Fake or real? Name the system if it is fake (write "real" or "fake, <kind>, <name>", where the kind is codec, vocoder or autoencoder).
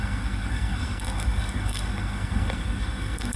fake, codec, SNAC